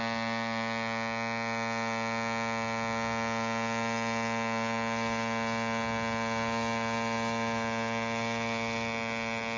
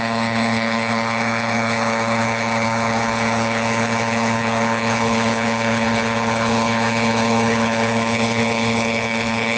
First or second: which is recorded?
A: first